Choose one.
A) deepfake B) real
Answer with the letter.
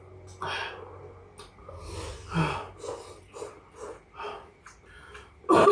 B